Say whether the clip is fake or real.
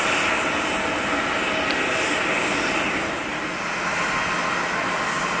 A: real